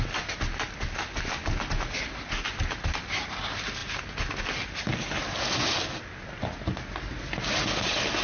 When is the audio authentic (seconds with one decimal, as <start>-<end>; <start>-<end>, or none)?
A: 0.0-8.2